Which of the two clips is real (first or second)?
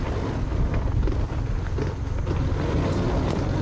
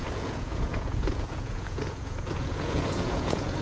first